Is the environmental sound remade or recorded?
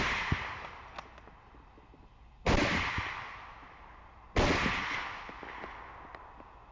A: recorded